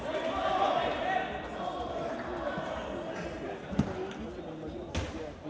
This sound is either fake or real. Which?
real